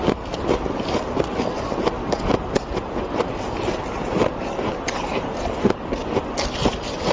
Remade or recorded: recorded